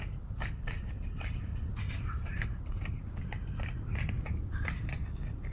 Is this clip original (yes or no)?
yes